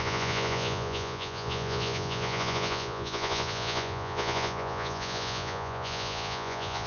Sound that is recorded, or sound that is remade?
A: remade